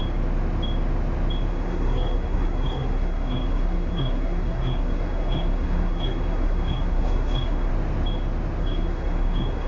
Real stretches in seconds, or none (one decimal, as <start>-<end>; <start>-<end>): 0.0-1.5; 7.7-8.6